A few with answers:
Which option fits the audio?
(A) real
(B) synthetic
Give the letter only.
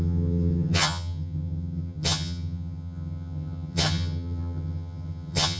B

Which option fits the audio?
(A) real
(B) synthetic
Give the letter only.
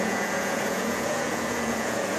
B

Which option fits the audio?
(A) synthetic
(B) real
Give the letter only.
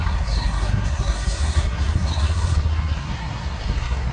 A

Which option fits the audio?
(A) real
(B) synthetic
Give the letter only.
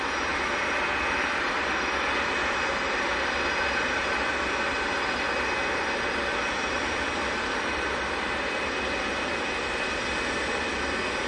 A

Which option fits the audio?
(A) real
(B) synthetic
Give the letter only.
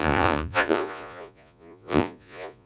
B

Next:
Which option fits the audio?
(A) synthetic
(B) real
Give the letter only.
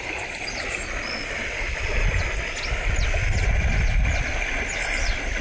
B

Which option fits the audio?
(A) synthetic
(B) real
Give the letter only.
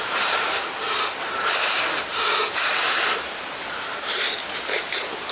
A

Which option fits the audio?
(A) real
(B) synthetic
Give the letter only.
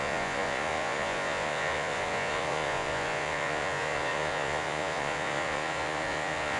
B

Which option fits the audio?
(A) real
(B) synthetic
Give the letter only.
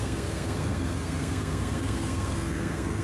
B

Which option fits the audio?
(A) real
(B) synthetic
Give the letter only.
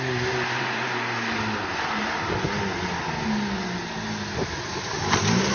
A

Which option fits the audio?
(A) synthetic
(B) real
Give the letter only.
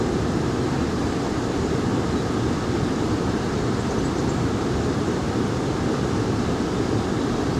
B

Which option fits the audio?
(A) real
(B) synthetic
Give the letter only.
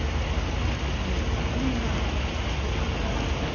A